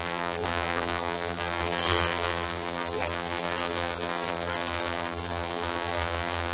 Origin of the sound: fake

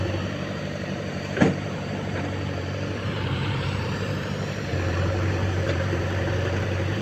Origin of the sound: fake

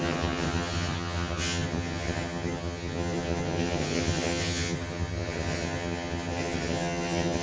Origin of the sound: fake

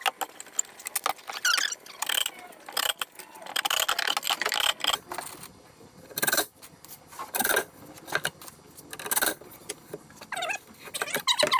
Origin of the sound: real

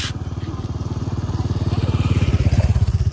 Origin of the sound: real